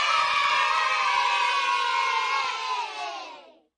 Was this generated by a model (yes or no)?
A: no